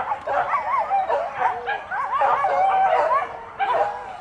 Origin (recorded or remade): recorded